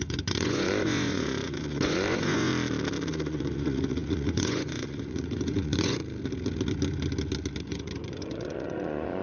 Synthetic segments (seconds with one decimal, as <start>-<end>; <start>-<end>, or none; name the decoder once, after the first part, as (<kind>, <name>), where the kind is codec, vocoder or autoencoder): 0.0-2.5 (vocoder, Vocos); 3.1-6.0; 7.6-9.2

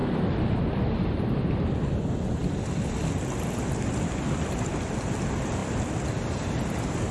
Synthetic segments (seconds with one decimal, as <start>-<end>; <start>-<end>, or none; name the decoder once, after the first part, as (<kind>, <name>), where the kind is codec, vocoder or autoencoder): none